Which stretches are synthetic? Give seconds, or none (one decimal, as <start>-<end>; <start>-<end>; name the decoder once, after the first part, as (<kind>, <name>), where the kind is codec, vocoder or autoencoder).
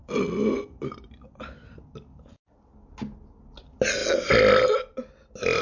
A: none